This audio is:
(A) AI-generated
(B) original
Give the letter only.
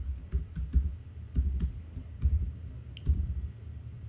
B